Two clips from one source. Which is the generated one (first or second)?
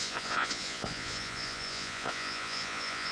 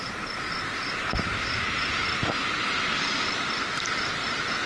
first